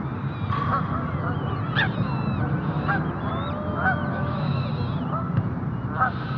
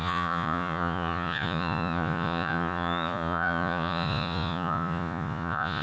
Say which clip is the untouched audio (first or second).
first